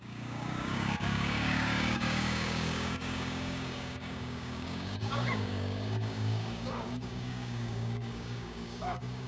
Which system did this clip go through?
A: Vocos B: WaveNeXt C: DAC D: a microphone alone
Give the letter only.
C